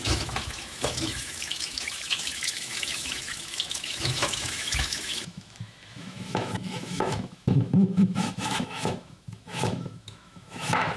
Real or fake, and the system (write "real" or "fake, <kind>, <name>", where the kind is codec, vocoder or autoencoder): fake, autoencoder, DAC-VAE